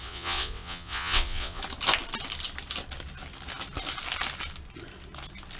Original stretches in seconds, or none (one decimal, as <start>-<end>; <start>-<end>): 1.6-5.6